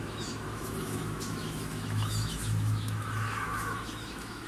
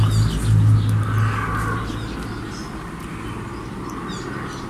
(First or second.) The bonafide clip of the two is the second